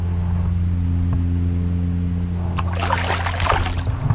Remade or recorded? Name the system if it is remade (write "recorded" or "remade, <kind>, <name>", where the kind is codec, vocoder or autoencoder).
recorded